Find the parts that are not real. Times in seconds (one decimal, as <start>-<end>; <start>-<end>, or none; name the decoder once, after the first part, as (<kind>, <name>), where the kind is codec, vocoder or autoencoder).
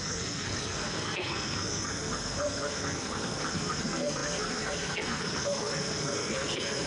0.0-6.9 (codec, SNAC)